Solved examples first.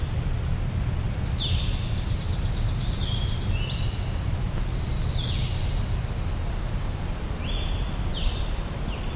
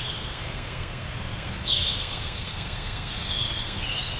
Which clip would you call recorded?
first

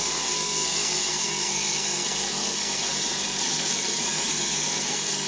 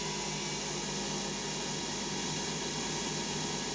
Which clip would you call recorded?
second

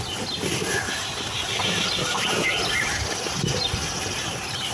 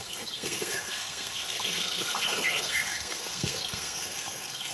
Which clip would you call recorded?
first